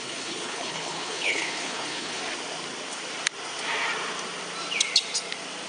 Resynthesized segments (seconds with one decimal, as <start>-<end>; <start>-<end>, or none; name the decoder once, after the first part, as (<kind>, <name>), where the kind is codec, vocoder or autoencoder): 0.0-2.2 (codec, HILCodec)